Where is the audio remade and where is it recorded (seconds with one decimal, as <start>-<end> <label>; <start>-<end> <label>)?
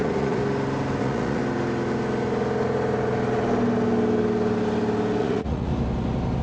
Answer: 0.0-0.4 remade; 0.4-1.0 recorded; 1.0-1.4 remade; 1.4-5.2 recorded; 5.2-5.7 remade; 5.7-6.4 recorded